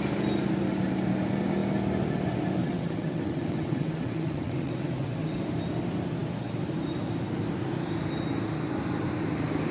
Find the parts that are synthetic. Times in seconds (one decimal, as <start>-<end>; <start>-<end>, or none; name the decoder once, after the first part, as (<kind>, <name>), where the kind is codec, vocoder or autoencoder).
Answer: 2.6-5.4 (vocoder, WaveNeXt)